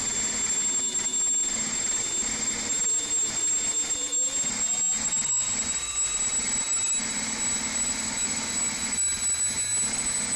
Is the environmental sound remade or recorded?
recorded